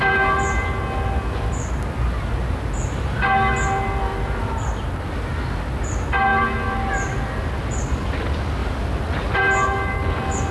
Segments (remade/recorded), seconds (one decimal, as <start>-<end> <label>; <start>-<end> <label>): 0.0-6.3 recorded; 6.3-6.9 remade; 6.9-8.6 recorded; 8.6-9.4 remade; 9.4-10.5 recorded